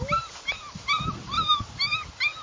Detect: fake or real real